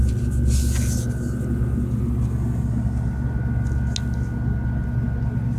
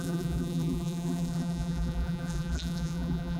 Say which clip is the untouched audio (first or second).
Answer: first